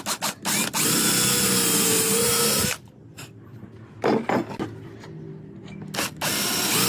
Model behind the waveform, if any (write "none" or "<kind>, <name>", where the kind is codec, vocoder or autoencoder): none